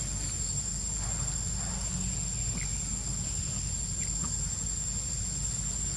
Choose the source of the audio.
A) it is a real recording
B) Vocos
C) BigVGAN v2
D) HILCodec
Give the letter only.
A